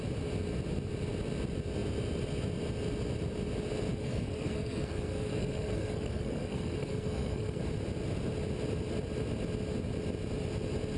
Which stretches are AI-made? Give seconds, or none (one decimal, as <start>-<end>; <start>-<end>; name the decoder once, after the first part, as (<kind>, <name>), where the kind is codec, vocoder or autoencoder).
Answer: 3.9-7.6 (codec, SNAC)